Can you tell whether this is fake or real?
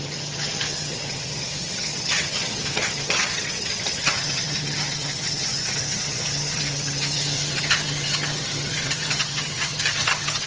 fake